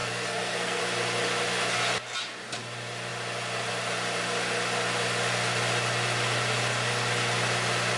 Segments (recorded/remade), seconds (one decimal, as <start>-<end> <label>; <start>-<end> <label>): 0.0-0.8 remade; 0.8-8.0 recorded